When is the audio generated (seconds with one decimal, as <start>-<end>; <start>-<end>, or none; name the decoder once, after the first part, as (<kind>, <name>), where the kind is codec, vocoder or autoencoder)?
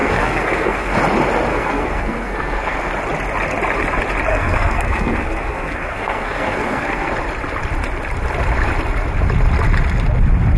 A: 0.0-1.0 (codec, SNAC); 1.5-2.9; 4.3-7.1